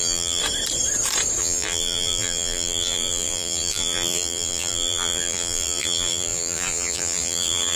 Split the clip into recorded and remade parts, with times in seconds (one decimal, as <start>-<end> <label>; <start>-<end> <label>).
0.0-0.4 remade; 0.4-1.4 recorded; 1.4-7.8 remade